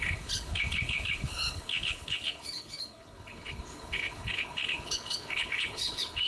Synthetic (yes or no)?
yes